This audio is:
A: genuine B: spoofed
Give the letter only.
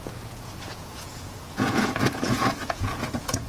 B